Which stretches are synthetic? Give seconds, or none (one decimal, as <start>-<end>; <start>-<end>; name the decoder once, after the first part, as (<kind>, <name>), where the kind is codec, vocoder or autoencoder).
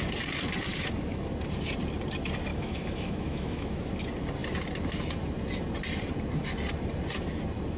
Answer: 2.5-3.7 (autoencoder, DAC-VAE)